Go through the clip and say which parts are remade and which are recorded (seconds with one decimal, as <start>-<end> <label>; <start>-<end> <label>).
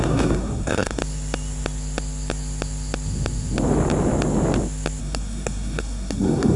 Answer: 0.0-1.0 remade; 1.0-5.0 recorded; 5.0-6.6 remade